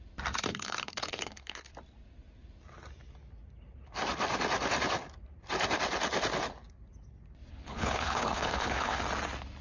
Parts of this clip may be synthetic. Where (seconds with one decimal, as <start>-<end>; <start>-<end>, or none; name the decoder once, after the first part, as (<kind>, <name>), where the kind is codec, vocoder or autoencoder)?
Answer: 0.5-1.7 (codec, HILCodec); 7.5-9.0